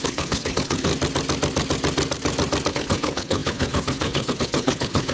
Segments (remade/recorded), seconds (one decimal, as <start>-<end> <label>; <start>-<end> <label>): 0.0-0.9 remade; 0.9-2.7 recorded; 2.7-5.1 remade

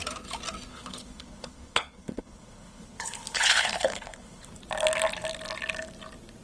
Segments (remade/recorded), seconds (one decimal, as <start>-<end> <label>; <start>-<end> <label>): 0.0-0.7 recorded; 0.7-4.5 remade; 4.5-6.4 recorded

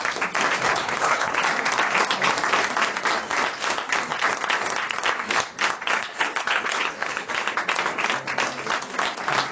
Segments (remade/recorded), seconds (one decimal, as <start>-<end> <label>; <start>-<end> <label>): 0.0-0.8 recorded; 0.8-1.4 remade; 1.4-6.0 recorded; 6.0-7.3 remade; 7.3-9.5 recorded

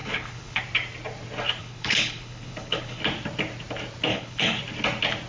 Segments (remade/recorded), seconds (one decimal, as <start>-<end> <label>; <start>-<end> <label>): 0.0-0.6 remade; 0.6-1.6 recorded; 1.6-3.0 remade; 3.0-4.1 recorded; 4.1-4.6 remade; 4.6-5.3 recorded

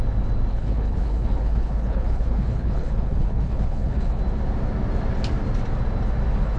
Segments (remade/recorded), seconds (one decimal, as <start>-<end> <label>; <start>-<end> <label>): 0.0-0.5 recorded; 0.5-4.2 remade; 4.2-6.6 recorded

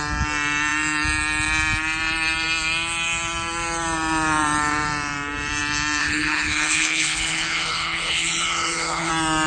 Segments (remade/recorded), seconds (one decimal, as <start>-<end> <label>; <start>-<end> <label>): 0.0-6.0 recorded; 6.0-9.1 remade; 9.1-9.5 recorded

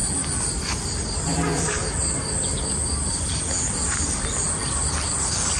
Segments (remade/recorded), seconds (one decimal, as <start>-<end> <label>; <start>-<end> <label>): 0.0-5.6 recorded

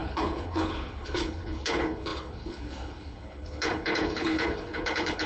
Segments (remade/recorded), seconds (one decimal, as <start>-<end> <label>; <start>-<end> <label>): 0.0-5.3 remade